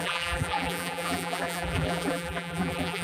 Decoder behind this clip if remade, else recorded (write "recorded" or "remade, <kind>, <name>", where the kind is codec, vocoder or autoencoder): remade, vocoder, BigVGAN v2